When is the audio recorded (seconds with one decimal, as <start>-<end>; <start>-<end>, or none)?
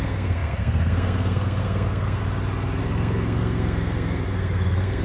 2.2-2.8